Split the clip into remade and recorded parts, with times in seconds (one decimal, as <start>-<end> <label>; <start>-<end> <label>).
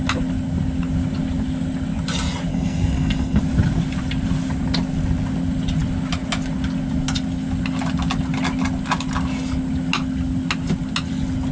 0.0-2.5 recorded; 2.5-3.4 remade; 3.4-11.5 recorded